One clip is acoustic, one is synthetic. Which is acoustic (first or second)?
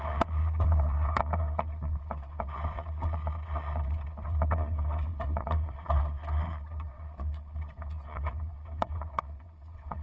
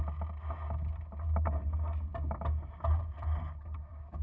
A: second